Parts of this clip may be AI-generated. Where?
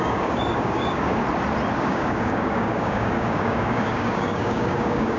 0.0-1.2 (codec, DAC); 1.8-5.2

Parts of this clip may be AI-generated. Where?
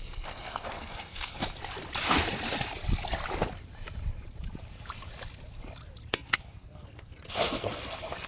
0.0-1.4 (codec, SNAC); 6.1-8.3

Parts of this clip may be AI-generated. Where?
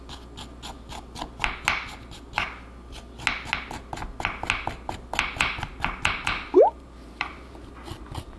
6.2-8.4 (vocoder, BigVGAN v2)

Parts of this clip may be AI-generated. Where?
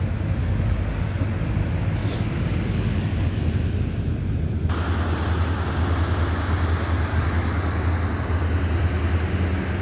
0.4-1.6 (codec, DAC); 2.0-3.5; 7.1-7.9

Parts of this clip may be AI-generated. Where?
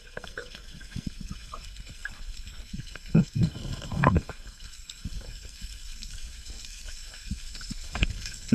0.0-8.5 (codec, SNAC)